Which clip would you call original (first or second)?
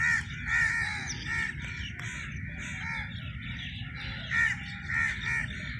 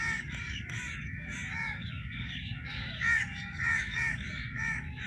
first